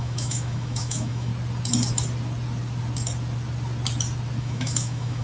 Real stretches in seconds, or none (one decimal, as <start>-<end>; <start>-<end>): 1.3-4.4